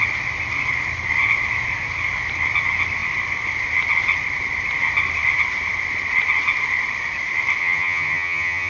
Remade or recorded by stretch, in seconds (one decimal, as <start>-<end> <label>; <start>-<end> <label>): 0.0-7.6 recorded; 7.6-8.7 remade